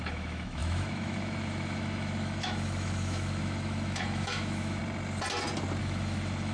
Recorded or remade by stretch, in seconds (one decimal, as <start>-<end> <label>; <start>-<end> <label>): 0.0-4.8 remade; 4.8-5.8 recorded; 5.8-6.5 remade